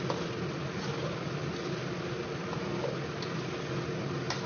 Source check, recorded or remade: recorded